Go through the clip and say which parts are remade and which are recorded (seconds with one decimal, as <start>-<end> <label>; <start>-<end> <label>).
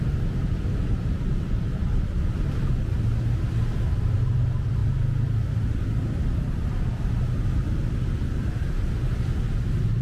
0.0-10.0 recorded